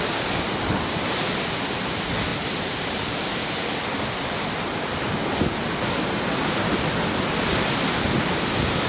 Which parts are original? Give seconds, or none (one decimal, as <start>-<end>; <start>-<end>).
0.0-8.9

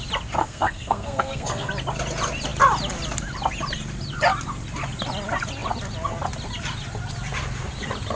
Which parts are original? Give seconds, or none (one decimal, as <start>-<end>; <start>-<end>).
0.0-0.4; 1.7-8.2